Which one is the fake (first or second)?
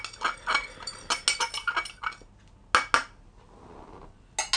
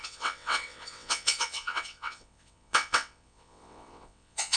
second